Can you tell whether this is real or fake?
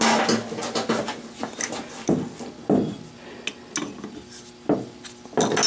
real